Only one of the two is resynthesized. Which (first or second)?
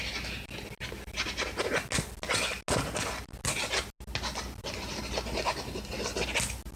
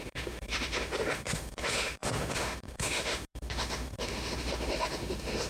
second